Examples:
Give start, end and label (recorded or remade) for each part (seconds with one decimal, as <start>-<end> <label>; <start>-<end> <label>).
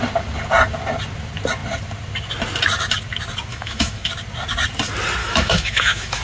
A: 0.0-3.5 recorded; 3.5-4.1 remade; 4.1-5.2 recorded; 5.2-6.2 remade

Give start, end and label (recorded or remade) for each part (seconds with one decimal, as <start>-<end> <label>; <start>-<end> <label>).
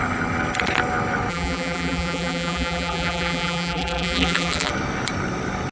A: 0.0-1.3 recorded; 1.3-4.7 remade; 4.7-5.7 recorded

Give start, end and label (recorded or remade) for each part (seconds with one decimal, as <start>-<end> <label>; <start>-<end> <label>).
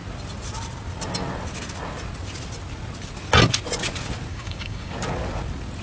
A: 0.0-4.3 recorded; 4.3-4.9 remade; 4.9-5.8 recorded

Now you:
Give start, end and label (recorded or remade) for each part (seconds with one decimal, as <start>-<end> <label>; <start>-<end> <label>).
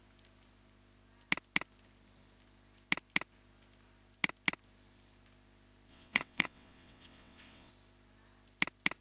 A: 0.0-5.9 recorded; 5.9-7.7 remade; 7.7-9.0 recorded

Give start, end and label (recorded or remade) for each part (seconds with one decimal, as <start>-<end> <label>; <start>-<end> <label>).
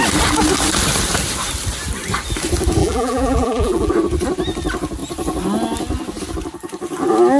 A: 0.0-2.8 recorded; 2.8-3.9 remade; 3.9-7.4 recorded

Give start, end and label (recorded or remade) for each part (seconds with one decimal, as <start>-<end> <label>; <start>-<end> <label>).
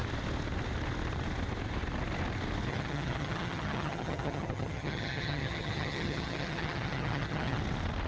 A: 0.0-2.7 recorded; 2.7-7.6 remade; 7.6-8.1 recorded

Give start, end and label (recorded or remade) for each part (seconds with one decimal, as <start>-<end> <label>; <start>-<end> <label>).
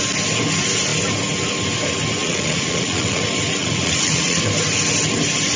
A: 0.0-2.2 recorded; 2.2-3.2 remade; 3.2-3.6 recorded; 3.6-4.4 remade; 4.4-5.6 recorded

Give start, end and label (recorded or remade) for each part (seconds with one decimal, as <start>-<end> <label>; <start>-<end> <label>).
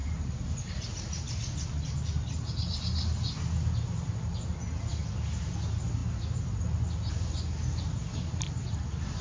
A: 0.0-9.2 recorded